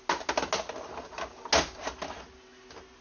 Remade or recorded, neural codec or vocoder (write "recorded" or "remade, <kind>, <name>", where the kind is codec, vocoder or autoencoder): recorded